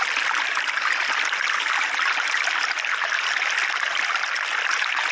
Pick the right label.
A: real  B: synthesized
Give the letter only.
A